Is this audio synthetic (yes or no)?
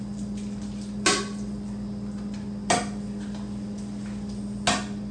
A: no